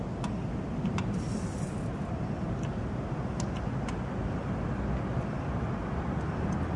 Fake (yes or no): no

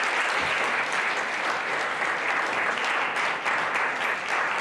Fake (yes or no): no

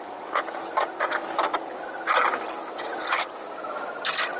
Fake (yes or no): no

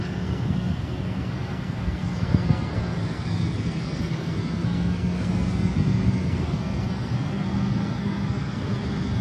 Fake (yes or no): yes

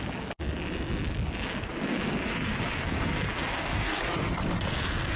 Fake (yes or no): no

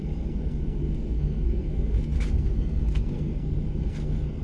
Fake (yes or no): yes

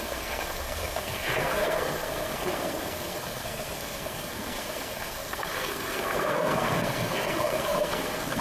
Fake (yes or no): yes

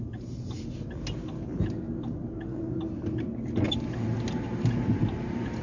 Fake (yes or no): no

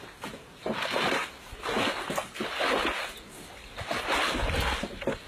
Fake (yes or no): no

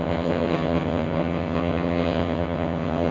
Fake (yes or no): yes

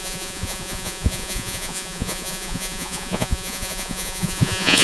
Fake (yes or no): yes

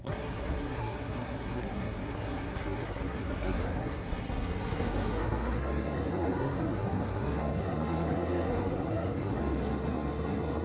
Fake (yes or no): yes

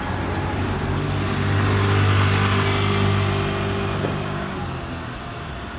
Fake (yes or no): no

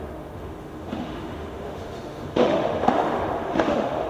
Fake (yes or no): yes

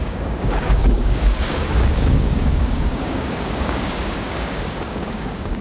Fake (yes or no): yes